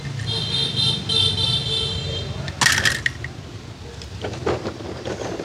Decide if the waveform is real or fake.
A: real